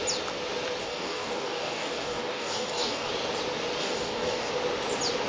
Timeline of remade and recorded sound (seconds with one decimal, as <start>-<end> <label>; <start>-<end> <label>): 0.0-0.8 recorded; 0.8-3.1 remade; 3.1-3.8 recorded; 3.8-4.5 remade; 4.5-5.3 recorded